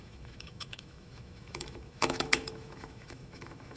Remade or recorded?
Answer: remade